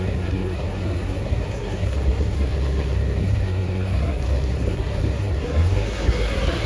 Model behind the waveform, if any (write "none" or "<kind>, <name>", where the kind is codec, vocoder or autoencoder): codec, SNAC